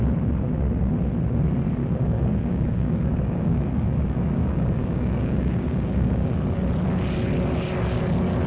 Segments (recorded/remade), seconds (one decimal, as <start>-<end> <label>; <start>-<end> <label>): 0.0-1.8 recorded; 1.8-6.3 remade; 6.3-8.5 recorded